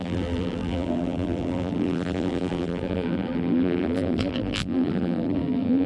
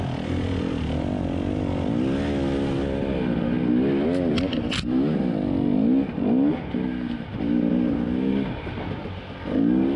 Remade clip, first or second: first